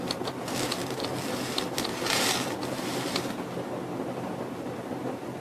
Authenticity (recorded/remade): recorded